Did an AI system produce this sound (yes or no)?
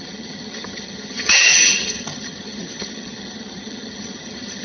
yes